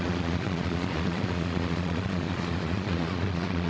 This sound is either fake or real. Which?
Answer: fake